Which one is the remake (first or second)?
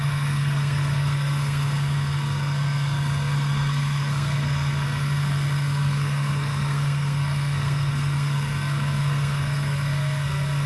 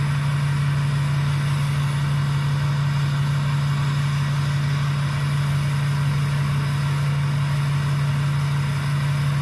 first